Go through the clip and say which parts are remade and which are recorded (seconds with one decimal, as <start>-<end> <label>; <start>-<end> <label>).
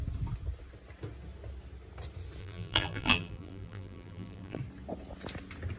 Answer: 0.0-2.4 recorded; 2.4-4.6 remade; 4.6-5.8 recorded